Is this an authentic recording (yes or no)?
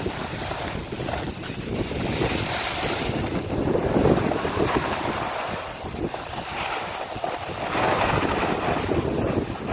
yes